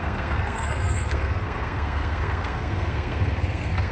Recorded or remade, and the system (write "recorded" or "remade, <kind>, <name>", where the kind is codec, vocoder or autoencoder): remade, codec, SNAC